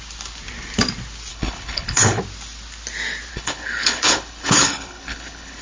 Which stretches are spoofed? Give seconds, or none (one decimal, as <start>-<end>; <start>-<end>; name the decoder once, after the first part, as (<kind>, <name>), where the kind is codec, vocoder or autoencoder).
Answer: 1.3-2.2 (codec, HILCodec); 3.3-5.6